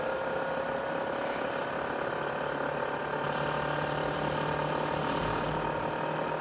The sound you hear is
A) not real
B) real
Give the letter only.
B